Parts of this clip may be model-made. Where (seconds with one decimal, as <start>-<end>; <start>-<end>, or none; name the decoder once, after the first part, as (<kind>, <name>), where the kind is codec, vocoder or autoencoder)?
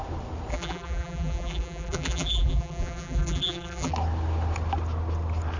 0.5-3.9 (vocoder, BigVGAN v2)